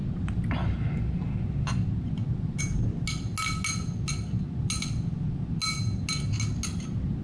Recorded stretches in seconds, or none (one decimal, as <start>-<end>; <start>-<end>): 0.0-7.2